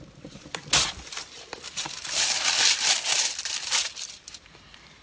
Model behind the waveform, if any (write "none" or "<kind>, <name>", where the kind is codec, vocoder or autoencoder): vocoder, BigVGAN v2